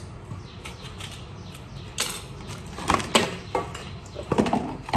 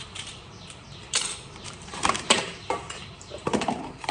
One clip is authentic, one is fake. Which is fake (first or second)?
second